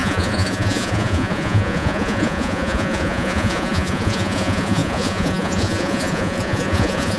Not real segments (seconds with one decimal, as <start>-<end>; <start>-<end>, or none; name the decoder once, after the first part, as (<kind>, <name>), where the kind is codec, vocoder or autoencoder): 0.0-7.2 (vocoder, Vocos)